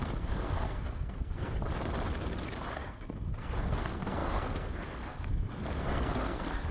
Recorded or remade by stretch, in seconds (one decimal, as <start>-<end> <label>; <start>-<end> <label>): 0.0-1.7 remade; 1.7-2.7 recorded; 2.7-6.7 remade